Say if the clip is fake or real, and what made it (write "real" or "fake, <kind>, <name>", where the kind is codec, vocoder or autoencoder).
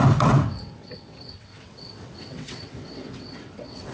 fake, vocoder, WaveNeXt